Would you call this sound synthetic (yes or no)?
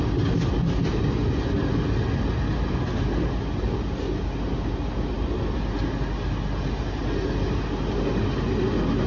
no